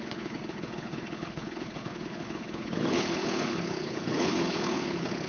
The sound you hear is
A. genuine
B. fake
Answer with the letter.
B